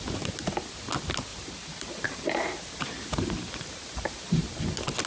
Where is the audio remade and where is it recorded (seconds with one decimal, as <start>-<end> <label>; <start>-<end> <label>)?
0.0-1.3 recorded; 1.3-4.4 remade; 4.4-5.1 recorded

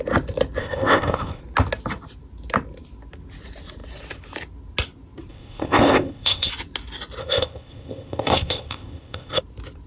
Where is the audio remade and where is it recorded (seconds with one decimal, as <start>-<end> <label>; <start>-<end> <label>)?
0.0-0.6 recorded; 0.6-1.4 remade; 1.4-5.3 recorded; 5.3-6.5 remade; 6.5-7.2 recorded; 7.2-9.4 remade; 9.4-9.9 recorded

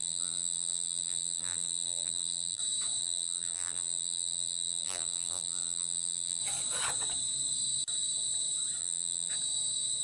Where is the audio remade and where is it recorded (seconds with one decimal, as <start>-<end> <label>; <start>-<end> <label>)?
0.0-2.6 remade; 2.6-3.0 recorded; 3.0-6.4 remade; 6.4-8.8 recorded; 8.8-9.3 remade; 9.3-10.0 recorded